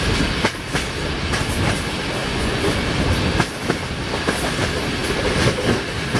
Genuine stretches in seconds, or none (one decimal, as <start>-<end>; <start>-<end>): 0.0-2.2; 2.8-6.2

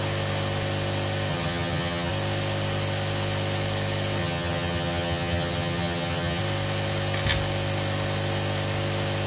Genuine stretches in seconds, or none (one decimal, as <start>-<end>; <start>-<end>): 0.0-1.3; 2.1-4.2; 6.4-9.3

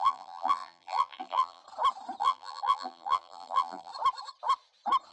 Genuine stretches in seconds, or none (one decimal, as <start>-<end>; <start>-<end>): 1.6-2.2; 3.9-5.1